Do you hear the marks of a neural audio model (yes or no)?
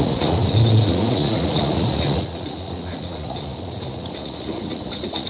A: yes